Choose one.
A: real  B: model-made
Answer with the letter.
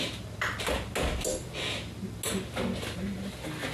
A